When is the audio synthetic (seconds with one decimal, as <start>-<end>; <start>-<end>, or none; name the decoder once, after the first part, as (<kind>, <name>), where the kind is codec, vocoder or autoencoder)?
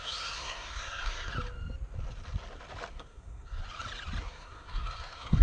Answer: 0.0-1.3 (codec, SNAC); 2.9-3.6; 4.2-5.4